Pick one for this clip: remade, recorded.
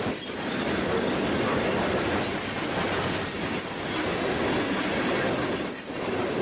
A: recorded